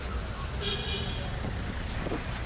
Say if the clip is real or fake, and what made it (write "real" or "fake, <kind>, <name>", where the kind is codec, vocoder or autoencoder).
real